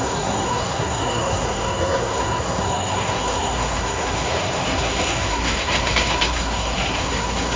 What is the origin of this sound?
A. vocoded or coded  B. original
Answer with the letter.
A